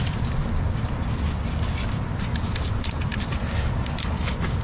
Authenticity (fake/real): real